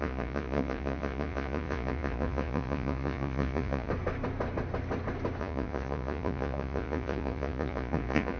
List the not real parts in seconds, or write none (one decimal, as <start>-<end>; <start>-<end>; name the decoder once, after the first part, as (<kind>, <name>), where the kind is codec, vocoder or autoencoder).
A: 0.0-3.9 (vocoder, Vocos); 5.4-8.4